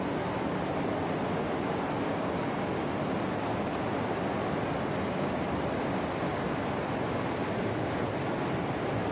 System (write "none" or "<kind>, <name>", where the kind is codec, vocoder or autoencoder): none